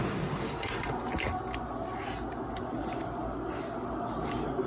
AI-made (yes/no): no